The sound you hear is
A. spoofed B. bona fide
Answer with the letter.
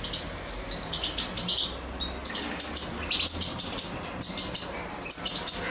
B